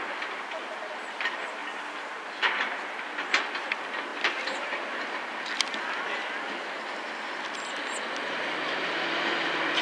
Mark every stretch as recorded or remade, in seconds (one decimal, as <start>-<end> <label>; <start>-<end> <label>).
0.0-9.8 recorded